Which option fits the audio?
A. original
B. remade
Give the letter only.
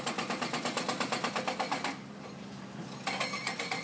A